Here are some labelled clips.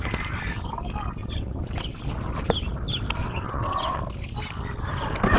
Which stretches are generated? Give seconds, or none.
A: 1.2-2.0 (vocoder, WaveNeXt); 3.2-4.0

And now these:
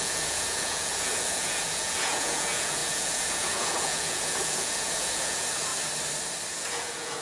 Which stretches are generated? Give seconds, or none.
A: 0.0-5.7 (vocoder, Vocos); 6.5-7.2

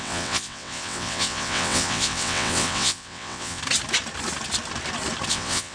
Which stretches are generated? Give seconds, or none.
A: 0.0-3.6 (vocoder, WaveNeXt); 5.3-5.7

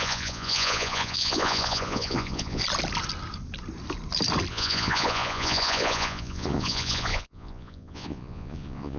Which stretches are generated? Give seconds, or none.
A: 0.0-2.6 (vocoder, Vocos); 4.5-9.0

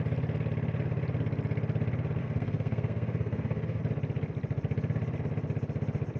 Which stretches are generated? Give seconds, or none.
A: 2.2-3.8 (codec, SNAC)